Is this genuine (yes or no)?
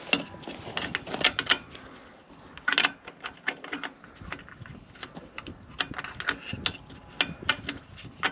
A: yes